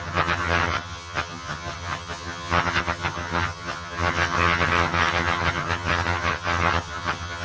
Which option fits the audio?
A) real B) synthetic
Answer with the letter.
B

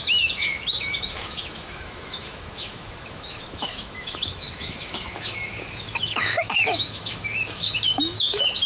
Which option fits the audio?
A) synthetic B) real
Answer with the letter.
A